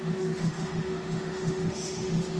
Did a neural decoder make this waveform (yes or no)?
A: yes